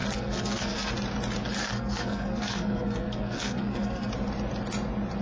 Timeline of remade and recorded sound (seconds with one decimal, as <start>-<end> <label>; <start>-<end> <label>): 0.0-0.9 remade; 0.9-1.6 recorded; 1.6-4.1 remade; 4.1-5.2 recorded